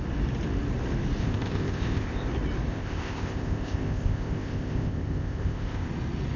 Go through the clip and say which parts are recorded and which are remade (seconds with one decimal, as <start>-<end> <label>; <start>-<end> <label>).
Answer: 0.0-1.2 recorded; 1.2-2.3 remade; 2.3-2.7 recorded; 2.7-5.9 remade; 5.9-6.4 recorded